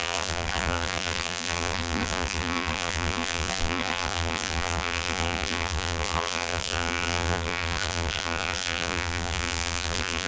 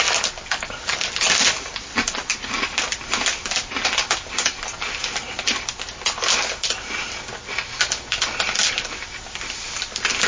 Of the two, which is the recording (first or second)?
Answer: second